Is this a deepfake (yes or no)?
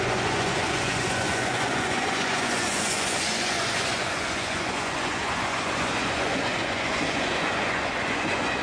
yes